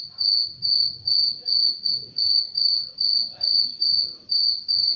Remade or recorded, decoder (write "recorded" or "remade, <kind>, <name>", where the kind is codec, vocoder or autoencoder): remade, vocoder, Vocos